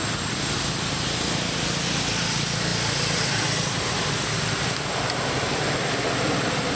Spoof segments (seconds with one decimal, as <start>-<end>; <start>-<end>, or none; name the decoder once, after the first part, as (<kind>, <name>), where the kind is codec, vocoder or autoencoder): none